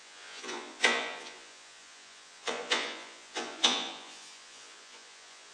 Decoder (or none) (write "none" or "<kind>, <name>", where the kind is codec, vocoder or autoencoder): vocoder, Vocos